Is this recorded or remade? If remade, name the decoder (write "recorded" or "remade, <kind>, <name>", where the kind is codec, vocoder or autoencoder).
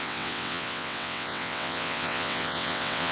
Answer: remade, vocoder, WaveNeXt